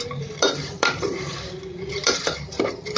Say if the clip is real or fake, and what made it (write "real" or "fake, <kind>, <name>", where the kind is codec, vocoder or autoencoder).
fake, vocoder, BigVGAN v2